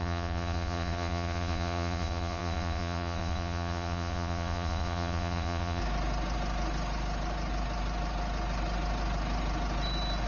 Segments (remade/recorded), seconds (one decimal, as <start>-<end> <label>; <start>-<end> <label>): 0.0-5.8 remade; 5.8-10.3 recorded